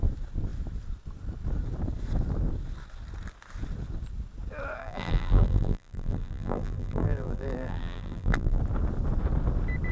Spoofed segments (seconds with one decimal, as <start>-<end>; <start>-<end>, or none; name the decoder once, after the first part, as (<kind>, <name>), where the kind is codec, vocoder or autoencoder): 4.8-8.6 (vocoder, BigVGAN v2)

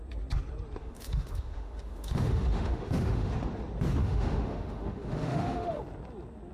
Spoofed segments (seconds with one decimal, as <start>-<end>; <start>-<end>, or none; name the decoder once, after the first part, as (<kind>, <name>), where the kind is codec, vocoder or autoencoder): 0.8-3.3 (autoencoder, DAC-VAE); 4.0-5.8